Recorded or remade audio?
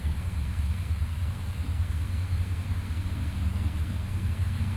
remade